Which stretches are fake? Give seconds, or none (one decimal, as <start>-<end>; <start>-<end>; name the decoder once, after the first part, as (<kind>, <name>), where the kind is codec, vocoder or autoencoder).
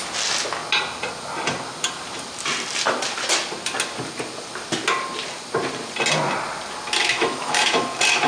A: 7.0-7.8 (autoencoder, DAC-VAE)